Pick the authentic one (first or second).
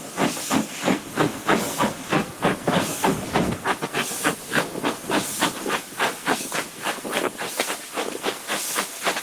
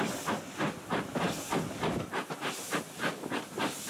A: second